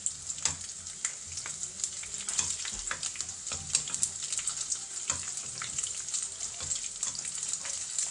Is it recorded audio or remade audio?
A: recorded